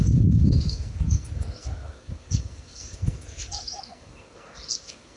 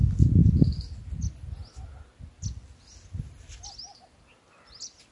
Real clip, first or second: second